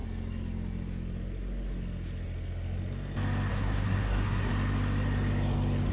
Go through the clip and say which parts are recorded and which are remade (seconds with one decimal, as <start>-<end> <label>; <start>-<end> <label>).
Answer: 0.0-3.5 recorded; 3.5-4.5 remade; 4.5-5.9 recorded

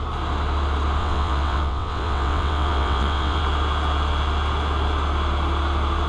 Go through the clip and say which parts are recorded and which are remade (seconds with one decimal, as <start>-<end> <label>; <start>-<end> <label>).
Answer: 0.0-1.0 recorded; 1.0-3.4 remade; 3.4-6.1 recorded

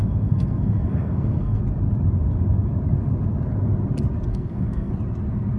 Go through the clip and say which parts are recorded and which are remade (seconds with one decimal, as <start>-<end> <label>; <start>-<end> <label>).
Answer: 0.0-1.6 remade; 1.6-4.3 recorded; 4.3-4.9 remade; 4.9-5.6 recorded

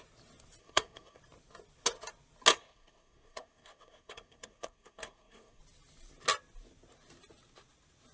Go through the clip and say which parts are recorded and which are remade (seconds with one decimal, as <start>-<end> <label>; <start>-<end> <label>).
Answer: 0.0-0.6 recorded; 0.6-1.2 remade; 1.2-2.5 recorded; 2.5-5.6 remade; 5.6-8.1 recorded